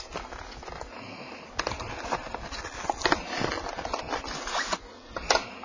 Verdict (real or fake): real